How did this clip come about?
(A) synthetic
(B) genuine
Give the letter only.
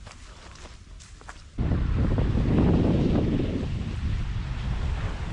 B